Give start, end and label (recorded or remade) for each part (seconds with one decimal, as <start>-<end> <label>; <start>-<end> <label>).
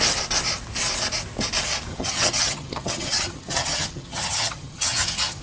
0.0-1.9 recorded; 1.9-5.4 remade